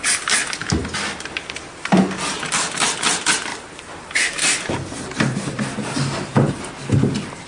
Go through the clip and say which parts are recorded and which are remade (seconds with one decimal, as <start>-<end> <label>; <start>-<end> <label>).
0.0-3.5 recorded; 3.5-6.5 remade; 6.5-7.5 recorded